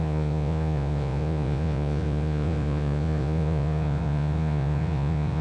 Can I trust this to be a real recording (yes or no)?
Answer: no